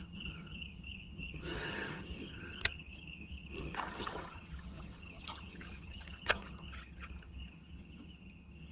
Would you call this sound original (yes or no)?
no